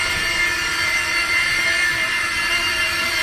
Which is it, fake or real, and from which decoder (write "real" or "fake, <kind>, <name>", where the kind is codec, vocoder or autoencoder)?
fake, vocoder, BigVGAN v2